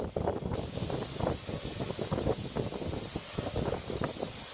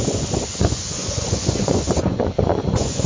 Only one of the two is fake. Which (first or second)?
second